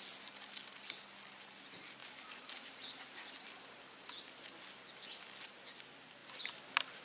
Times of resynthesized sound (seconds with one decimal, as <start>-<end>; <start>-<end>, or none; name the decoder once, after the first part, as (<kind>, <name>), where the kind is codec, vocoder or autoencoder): none